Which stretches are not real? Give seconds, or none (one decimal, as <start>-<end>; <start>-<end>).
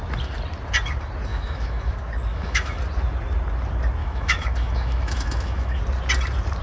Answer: 1.3-1.9; 2.3-2.8; 4.0-5.8